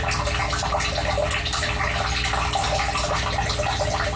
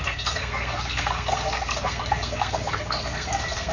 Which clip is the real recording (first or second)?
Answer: first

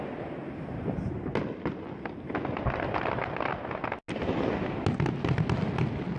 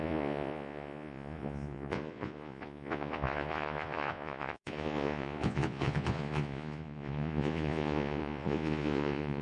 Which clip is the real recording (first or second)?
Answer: first